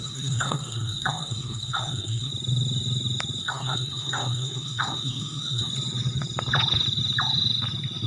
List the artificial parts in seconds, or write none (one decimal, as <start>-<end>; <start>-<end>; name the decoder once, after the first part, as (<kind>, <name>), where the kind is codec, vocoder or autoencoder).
0.0-2.3 (codec, SNAC); 3.4-5.7